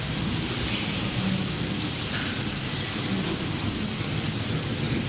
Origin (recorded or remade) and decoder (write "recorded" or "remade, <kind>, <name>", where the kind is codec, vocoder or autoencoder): recorded